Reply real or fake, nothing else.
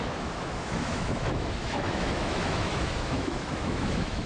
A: fake